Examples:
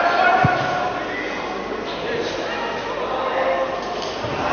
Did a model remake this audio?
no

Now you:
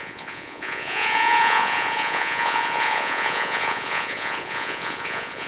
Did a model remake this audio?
yes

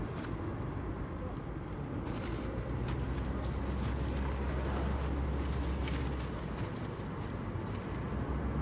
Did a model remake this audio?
no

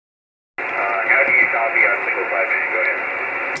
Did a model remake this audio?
no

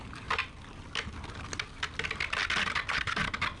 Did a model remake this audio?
no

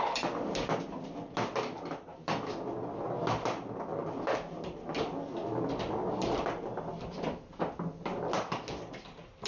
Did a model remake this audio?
no